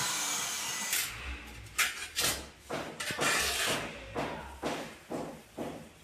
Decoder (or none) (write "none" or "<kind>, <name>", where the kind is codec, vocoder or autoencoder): none